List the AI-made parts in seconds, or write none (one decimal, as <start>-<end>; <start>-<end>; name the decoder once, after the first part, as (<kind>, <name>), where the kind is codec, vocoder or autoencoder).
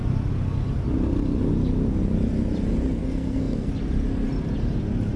3.0-3.7 (codec, SNAC)